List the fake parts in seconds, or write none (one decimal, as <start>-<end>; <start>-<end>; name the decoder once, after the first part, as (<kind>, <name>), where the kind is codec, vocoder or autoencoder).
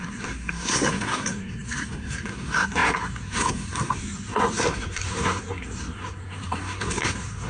0.0-7.5 (codec, SNAC)